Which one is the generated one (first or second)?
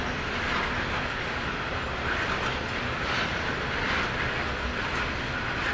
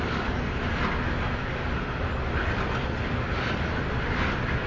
first